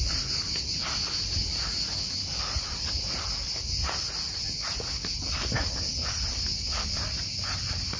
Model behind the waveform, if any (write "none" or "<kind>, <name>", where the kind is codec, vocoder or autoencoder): none